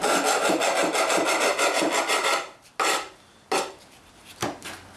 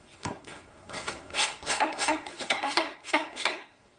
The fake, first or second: second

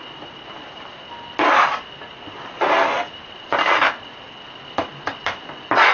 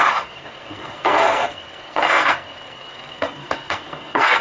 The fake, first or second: second